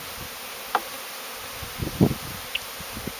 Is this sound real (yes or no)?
yes